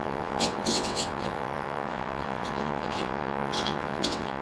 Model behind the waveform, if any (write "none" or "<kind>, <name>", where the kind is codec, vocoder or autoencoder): vocoder, WaveNeXt